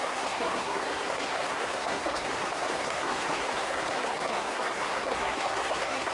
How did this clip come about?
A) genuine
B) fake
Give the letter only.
B